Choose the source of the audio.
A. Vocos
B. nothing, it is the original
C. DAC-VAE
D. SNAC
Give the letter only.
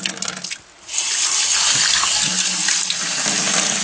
B